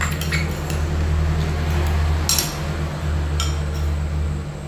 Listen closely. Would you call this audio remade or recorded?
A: recorded